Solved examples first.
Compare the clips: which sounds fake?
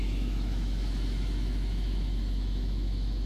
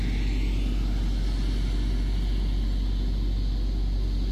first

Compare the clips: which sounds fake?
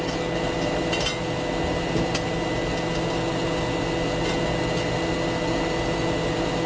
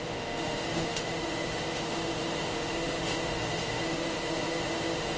second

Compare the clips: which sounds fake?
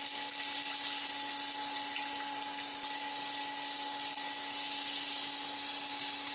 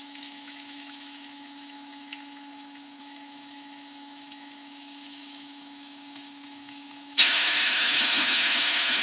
second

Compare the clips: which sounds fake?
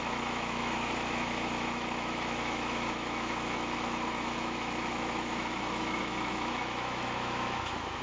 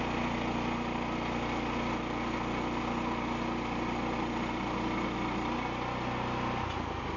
first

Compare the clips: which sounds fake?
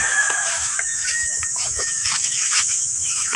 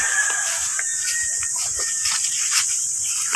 first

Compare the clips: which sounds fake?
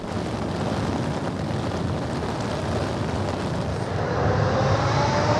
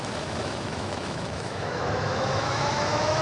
second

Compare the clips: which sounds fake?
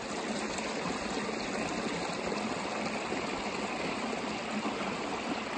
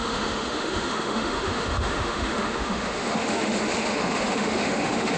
second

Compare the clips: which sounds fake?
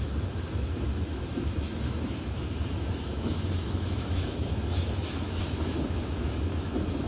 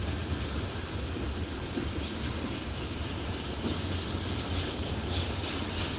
first